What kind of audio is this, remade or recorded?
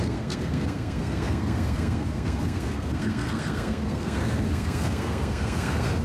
remade